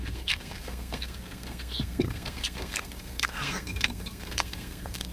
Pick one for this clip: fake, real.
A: fake